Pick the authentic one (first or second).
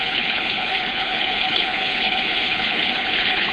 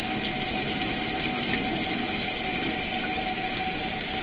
second